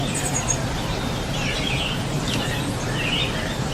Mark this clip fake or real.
real